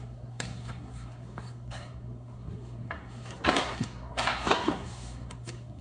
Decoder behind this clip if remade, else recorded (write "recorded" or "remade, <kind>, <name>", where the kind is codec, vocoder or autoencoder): remade, codec, SNAC